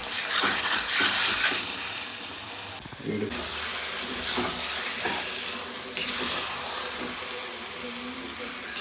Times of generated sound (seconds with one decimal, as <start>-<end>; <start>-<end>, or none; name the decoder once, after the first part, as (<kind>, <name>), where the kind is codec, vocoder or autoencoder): 0.0-2.7 (vocoder, BigVGAN v2)